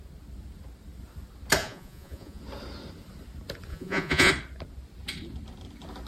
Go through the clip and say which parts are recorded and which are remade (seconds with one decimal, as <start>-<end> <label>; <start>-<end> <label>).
0.0-1.6 recorded; 1.6-2.4 remade; 2.4-3.7 recorded; 3.7-4.3 remade; 4.3-6.1 recorded

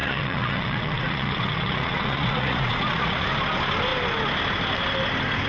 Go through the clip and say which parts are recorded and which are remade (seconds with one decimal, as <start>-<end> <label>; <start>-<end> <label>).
0.0-3.3 remade; 3.3-5.5 recorded

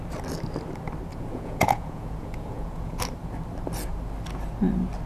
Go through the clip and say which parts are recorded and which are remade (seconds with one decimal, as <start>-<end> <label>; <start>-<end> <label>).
0.0-1.1 recorded; 1.1-3.0 remade; 3.0-5.1 recorded

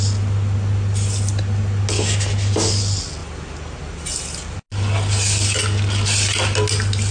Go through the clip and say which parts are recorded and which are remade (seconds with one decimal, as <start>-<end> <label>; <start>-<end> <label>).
0.0-7.1 recorded

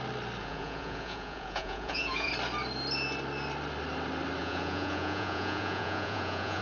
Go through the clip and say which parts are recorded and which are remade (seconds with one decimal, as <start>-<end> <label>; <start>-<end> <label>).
0.0-0.4 recorded; 0.4-2.3 remade; 2.3-4.4 recorded; 4.4-6.6 remade